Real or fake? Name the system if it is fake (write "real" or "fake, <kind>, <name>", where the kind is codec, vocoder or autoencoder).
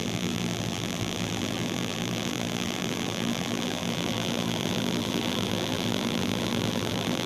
fake, vocoder, BigVGAN v2